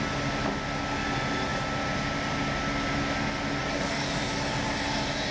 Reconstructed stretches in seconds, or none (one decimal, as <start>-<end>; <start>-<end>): 3.6-4.2